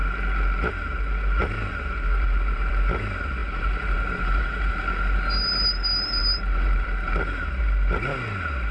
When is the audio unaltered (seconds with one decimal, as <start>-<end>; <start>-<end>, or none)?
0.0-1.4; 2.7-3.4; 4.7-6.2; 7.6-8.7